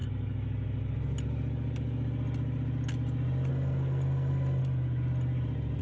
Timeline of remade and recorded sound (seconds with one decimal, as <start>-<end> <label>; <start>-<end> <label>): 0.0-3.5 recorded; 3.5-4.6 remade; 4.6-5.8 recorded